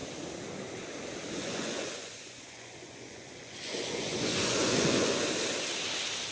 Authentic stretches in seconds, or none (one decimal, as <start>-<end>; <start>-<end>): 0.0-1.4; 5.2-6.3